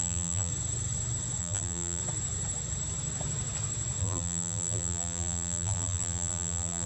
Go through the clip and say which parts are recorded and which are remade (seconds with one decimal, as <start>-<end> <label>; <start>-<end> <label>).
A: 0.0-0.5 remade; 0.5-1.4 recorded; 1.4-2.0 remade; 2.0-4.0 recorded; 4.0-6.9 remade